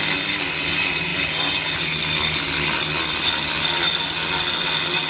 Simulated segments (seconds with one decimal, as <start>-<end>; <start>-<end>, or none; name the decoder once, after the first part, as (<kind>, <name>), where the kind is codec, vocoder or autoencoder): none